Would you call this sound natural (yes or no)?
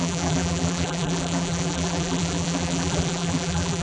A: no